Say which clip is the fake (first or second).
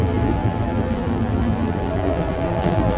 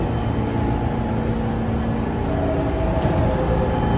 first